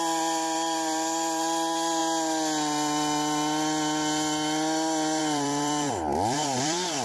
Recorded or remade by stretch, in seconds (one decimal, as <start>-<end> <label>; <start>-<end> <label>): 0.0-2.0 remade; 2.0-5.2 recorded; 5.2-7.0 remade